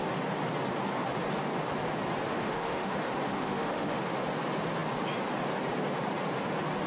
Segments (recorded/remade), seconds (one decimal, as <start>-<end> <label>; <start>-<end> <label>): 0.0-2.3 recorded; 2.3-2.9 remade; 2.9-3.3 recorded; 3.3-4.0 remade; 4.0-6.9 recorded